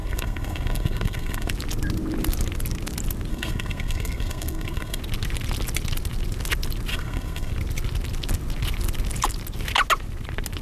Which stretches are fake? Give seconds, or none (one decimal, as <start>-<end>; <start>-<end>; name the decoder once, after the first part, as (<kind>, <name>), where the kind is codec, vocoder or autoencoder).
0.0-1.5 (codec, SNAC); 3.3-5.0; 6.9-7.5